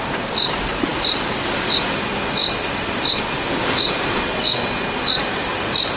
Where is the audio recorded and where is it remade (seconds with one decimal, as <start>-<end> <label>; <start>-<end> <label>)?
0.0-6.0 recorded